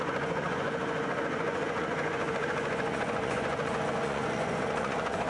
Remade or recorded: remade